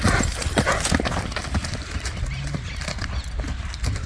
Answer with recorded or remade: recorded